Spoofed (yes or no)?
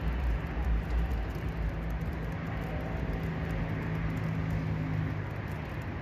no